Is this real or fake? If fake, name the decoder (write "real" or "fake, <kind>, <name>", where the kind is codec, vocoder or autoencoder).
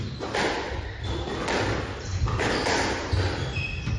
real